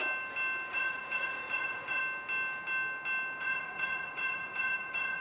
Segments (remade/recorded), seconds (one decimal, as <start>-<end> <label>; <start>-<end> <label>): 0.0-0.7 recorded; 0.7-2.0 remade; 2.0-3.4 recorded; 3.4-5.2 remade